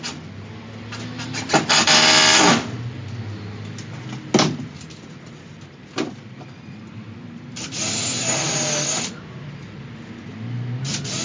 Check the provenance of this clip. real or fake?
real